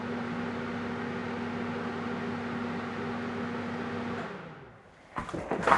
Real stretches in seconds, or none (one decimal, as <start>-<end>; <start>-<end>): 0.0-5.8